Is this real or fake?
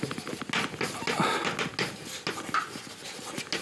real